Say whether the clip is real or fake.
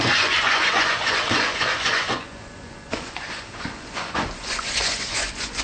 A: fake